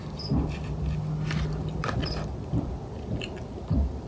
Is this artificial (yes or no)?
no